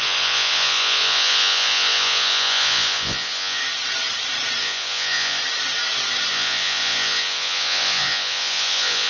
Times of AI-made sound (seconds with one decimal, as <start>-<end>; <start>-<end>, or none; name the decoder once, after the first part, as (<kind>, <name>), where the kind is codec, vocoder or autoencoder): 0.0-3.6 (vocoder, Vocos); 4.6-5.4; 6.3-9.1